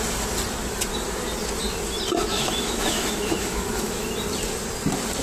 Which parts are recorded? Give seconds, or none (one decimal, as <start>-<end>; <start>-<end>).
0.0-2.3; 4.1-5.2